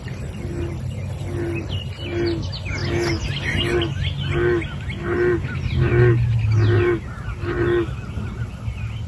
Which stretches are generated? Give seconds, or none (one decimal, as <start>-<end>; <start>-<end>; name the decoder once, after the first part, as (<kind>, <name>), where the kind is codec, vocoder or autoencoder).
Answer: none